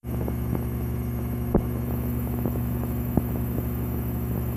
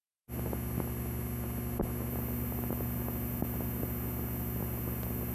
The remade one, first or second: first